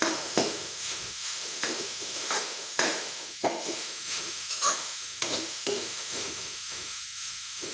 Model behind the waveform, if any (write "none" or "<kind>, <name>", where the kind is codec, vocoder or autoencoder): autoencoder, DAC-VAE